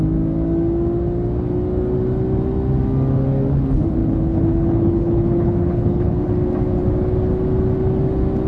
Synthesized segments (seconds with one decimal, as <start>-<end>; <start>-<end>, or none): 4.0-6.3